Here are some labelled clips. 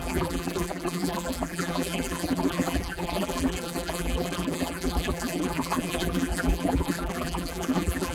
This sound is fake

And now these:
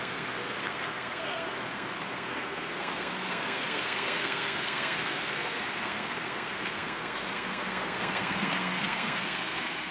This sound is fake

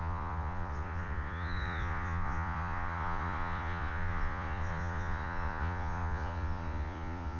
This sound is fake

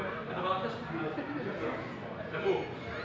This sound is real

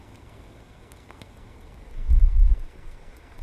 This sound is fake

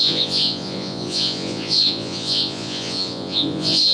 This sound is fake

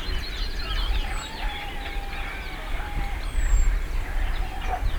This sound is real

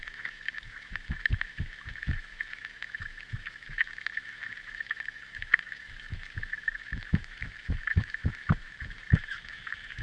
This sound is fake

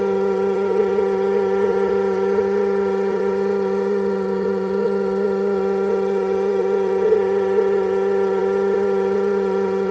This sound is fake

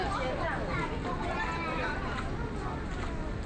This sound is real